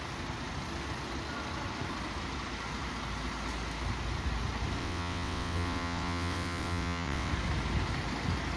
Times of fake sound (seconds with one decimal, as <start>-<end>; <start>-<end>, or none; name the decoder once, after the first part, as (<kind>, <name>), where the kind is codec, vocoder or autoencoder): 4.8-7.3 (vocoder, WaveNeXt)